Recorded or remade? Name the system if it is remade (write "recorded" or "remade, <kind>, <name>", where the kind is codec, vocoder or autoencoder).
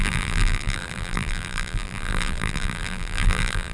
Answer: remade, vocoder, BigVGAN v2